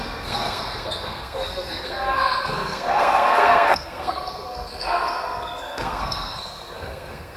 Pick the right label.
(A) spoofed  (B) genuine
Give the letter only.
A